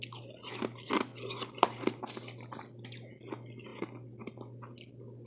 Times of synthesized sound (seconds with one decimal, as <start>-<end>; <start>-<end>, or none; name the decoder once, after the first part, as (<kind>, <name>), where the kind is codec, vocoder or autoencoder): none